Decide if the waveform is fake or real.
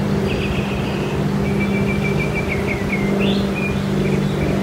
real